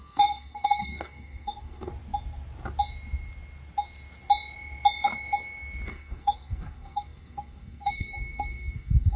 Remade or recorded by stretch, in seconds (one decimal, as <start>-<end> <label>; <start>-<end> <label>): 0.0-1.9 remade; 1.9-5.9 recorded; 5.9-9.2 remade